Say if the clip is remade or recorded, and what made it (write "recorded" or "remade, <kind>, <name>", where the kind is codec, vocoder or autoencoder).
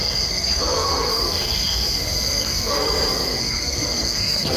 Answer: remade, codec, SNAC